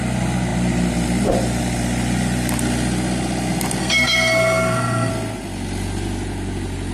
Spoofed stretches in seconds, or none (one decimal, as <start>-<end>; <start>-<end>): 3.8-5.1